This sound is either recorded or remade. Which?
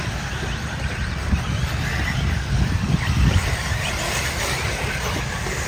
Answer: remade